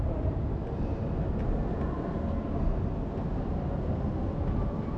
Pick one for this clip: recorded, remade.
recorded